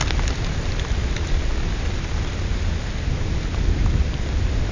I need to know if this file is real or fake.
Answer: real